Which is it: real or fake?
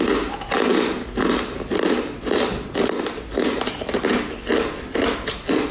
real